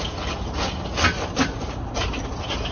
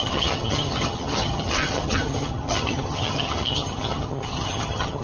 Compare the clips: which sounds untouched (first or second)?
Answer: first